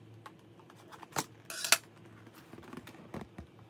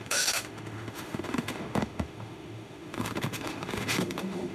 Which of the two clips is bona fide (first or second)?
first